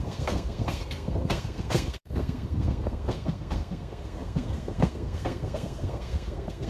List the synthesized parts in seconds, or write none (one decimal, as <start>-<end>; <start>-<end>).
0.0-6.7

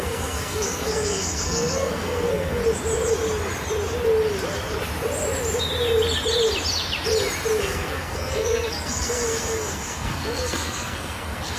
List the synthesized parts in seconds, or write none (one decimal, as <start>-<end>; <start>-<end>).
0.0-2.6; 7.6-11.6

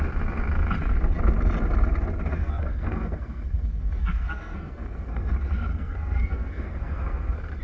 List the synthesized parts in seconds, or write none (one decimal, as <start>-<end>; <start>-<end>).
2.4-5.3; 5.7-7.6

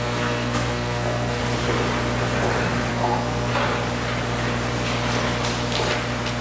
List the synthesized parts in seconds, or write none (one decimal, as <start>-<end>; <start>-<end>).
0.0-1.4; 2.9-3.5

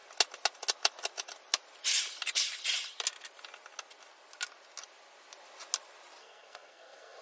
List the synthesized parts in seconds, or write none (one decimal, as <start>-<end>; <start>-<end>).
6.2-7.2